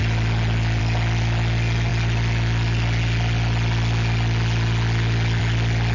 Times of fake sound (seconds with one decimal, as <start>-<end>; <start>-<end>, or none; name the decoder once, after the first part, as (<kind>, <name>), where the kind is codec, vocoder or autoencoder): none